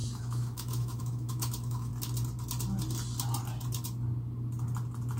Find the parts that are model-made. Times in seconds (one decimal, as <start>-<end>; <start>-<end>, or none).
0.0-1.9